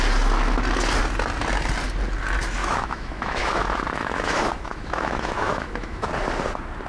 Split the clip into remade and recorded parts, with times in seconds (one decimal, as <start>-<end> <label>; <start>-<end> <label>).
0.0-2.6 recorded; 2.6-6.1 remade; 6.1-6.9 recorded